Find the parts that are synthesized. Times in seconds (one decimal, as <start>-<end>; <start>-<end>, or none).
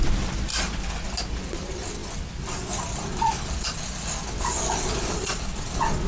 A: none